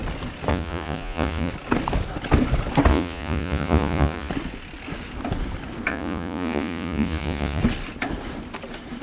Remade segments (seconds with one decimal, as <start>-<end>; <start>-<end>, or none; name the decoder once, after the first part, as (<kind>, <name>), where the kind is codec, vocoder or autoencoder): 0.5-1.5 (vocoder, Vocos); 2.9-4.3; 5.9-7.6